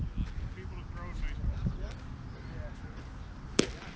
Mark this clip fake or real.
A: real